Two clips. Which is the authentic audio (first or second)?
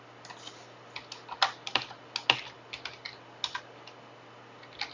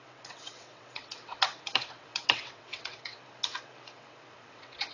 first